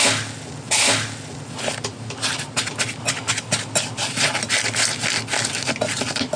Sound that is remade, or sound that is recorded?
recorded